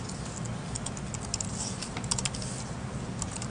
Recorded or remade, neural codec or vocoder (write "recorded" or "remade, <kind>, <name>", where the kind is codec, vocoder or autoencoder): recorded